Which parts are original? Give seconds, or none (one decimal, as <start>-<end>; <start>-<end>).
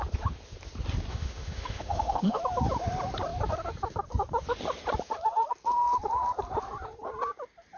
0.0-1.1; 2.4-7.8